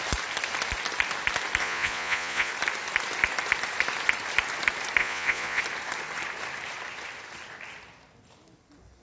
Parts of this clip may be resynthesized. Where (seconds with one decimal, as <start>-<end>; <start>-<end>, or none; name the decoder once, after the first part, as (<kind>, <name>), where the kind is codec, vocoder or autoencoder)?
1.6-2.5 (vocoder, Vocos); 5.0-5.6